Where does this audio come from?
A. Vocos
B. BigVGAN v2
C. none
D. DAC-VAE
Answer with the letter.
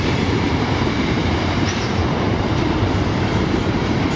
B